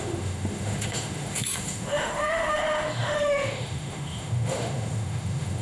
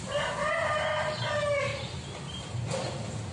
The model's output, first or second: first